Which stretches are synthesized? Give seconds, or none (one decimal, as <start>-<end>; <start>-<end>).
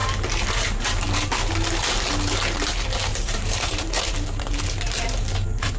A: 0.0-1.5; 3.1-4.1